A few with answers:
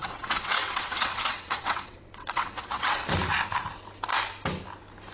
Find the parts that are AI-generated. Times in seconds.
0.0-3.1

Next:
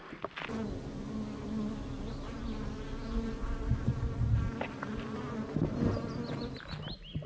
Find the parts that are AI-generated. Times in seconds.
none

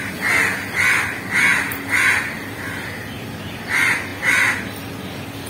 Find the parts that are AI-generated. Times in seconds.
none

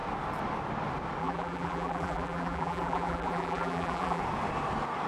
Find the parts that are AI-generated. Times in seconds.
1.2-4.2

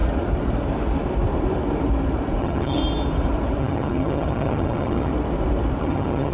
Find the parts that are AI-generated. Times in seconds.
2.4-2.8; 3.6-5.1; 5.8-6.3

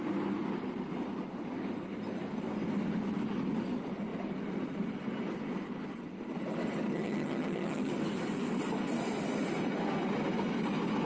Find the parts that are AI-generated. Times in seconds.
6.9-7.9

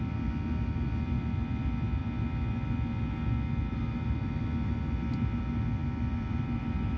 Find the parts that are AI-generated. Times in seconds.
5.8-7.0